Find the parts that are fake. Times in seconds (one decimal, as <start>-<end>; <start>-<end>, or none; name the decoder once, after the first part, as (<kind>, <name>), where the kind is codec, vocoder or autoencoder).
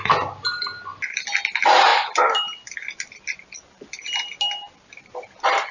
none